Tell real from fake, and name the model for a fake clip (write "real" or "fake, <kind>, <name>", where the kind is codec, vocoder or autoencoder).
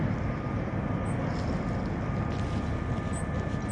real